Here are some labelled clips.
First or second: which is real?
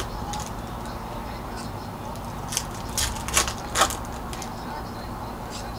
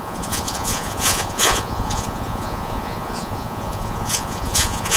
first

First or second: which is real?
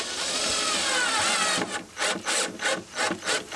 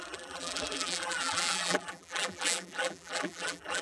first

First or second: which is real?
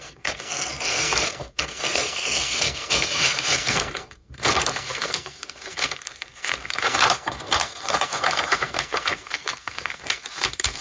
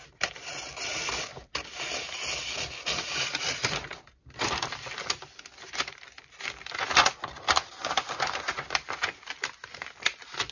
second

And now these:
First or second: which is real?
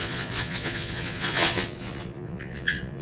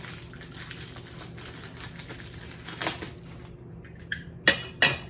second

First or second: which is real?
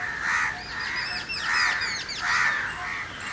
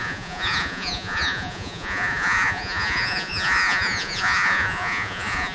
first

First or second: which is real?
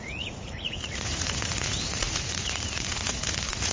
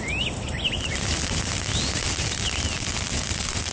second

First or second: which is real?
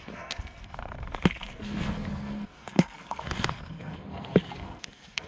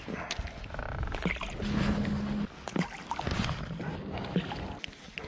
second